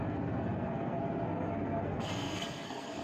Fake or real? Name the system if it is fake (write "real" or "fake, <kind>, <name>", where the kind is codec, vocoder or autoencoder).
fake, codec, SNAC